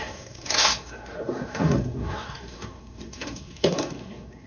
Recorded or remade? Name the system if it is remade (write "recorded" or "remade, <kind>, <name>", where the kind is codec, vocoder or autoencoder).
remade, codec, SNAC